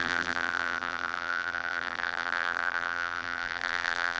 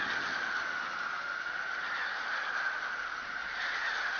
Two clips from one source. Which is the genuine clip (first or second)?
second